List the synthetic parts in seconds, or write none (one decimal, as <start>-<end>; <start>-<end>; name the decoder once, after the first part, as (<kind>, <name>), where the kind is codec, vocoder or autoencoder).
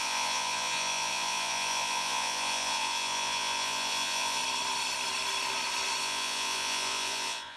0.0-4.4 (vocoder, Vocos); 6.0-7.6